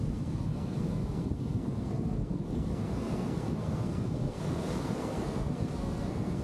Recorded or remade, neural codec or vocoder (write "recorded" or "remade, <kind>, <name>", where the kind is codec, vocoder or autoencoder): remade, codec, SNAC